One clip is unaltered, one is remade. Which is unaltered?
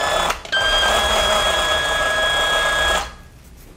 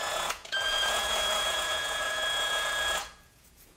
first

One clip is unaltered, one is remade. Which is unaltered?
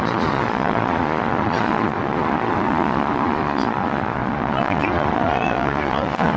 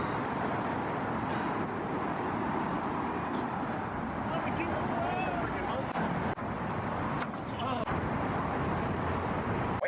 second